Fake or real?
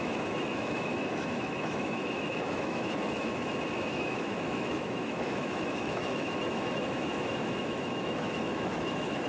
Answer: fake